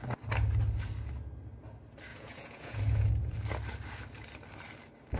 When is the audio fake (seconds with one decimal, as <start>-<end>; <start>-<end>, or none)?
2.1-3.1